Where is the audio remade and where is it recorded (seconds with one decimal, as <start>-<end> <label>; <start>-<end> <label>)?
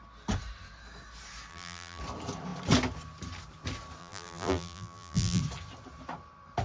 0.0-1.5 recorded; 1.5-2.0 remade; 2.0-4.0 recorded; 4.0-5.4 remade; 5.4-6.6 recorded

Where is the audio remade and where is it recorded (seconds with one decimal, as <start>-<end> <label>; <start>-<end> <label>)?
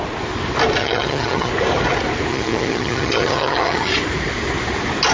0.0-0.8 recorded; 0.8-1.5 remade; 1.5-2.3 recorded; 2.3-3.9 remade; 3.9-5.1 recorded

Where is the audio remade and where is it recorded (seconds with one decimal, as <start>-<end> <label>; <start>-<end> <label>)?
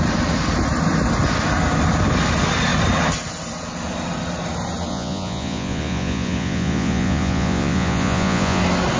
0.0-4.9 recorded; 4.9-8.6 remade; 8.6-9.0 recorded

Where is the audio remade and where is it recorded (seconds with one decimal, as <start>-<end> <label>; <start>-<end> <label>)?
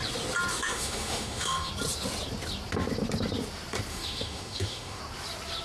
0.0-0.5 recorded; 0.5-1.7 remade; 1.7-3.9 recorded; 3.9-5.0 remade; 5.0-5.6 recorded